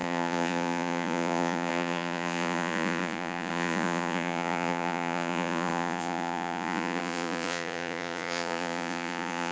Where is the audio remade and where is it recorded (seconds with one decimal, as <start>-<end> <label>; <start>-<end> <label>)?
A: 0.0-9.5 remade